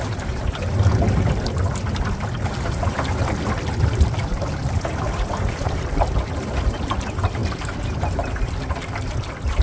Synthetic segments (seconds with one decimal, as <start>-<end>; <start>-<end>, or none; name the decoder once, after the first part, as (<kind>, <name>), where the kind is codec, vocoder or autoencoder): none